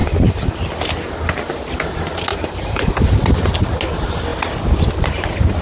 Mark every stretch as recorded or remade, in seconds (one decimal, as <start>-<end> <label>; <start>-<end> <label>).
0.0-0.5 remade; 0.5-2.3 recorded; 2.3-2.9 remade; 2.9-5.6 recorded